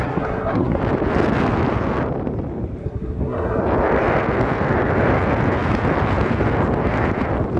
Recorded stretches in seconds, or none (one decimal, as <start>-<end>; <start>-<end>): 0.8-2.8; 3.6-7.6